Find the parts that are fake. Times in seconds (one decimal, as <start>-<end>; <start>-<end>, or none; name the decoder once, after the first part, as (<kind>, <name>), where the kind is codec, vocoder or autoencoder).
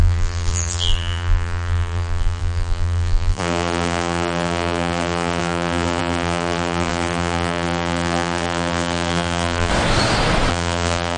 0.0-9.7 (vocoder, BigVGAN v2); 10.5-11.2